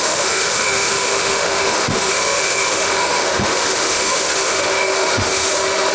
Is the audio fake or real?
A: fake